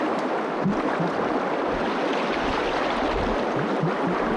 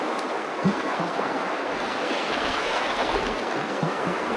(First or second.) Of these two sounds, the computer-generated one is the second